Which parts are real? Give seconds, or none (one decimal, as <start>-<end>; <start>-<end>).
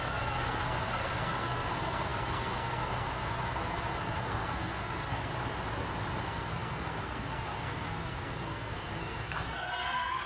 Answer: 5.3-6.2